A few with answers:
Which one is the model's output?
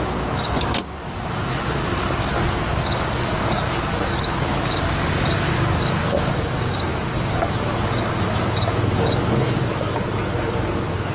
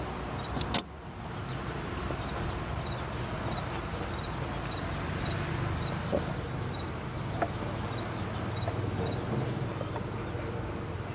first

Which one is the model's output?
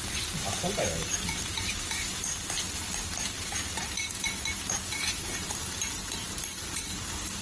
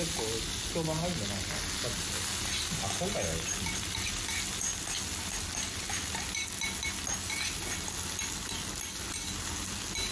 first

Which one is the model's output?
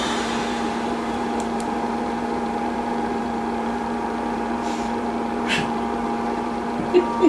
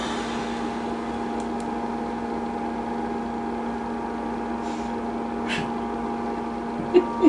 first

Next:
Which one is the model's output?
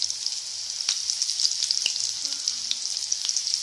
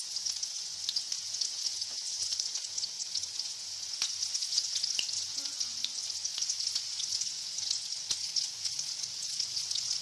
second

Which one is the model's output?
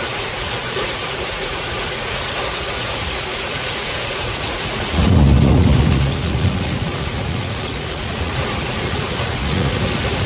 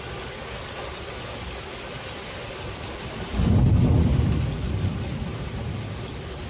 first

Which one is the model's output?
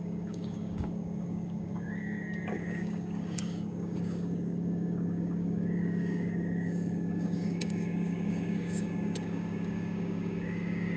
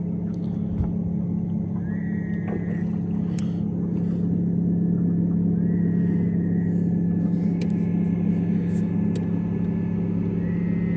first